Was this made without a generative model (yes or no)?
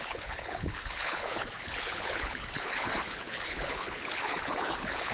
no